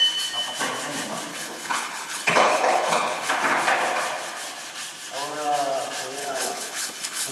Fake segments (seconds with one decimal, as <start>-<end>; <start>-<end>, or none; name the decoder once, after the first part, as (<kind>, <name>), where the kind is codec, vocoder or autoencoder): 1.3-3.3 (codec, HILCodec); 6.2-7.3